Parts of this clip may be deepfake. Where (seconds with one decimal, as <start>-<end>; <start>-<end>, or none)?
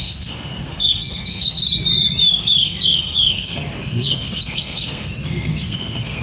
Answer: 0.0-1.6; 2.3-6.2